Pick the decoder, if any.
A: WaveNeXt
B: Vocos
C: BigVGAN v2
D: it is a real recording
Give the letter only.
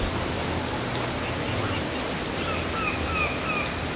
D